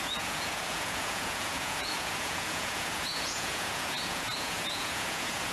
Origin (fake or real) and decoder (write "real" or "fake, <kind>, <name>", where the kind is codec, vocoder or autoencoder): fake, vocoder, Vocos